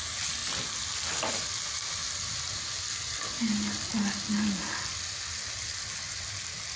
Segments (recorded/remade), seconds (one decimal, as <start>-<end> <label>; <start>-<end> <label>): 0.0-6.8 recorded